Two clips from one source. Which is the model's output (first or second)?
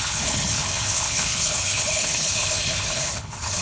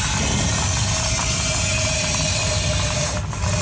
first